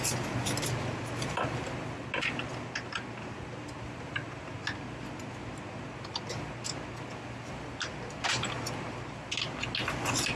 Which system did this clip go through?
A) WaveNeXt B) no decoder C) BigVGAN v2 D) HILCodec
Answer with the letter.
B